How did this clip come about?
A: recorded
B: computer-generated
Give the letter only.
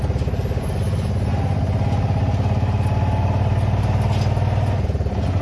A